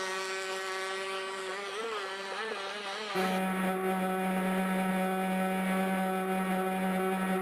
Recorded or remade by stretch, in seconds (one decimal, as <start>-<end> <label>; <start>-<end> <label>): 0.0-7.4 recorded